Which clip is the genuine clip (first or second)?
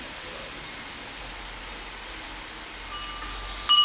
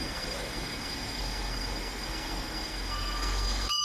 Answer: first